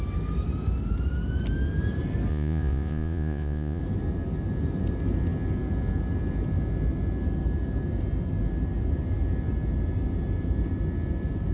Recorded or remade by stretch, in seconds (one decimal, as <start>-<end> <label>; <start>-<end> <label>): 0.0-2.3 recorded; 2.3-3.8 remade; 3.8-11.5 recorded